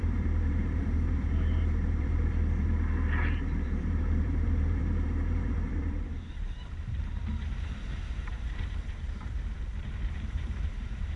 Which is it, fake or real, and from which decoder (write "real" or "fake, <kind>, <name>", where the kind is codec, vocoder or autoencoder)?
fake, vocoder, BigVGAN v2